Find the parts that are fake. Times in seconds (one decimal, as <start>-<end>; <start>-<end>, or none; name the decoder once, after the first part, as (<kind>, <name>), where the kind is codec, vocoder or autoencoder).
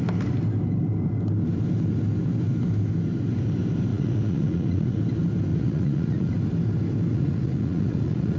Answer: 3.9-5.0 (vocoder, Vocos); 5.5-6.3; 7.1-8.4